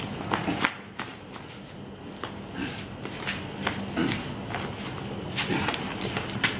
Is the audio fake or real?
real